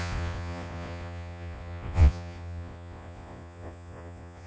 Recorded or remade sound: remade